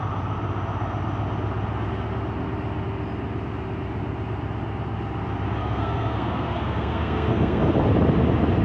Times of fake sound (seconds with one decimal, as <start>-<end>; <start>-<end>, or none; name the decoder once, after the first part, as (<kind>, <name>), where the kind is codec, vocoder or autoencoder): 5.6-7.6 (codec, SNAC)